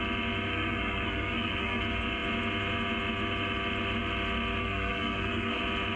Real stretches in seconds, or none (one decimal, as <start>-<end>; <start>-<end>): 0.0-0.5; 1.8-4.6; 5.6-6.0